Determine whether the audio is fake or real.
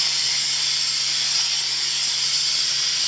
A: real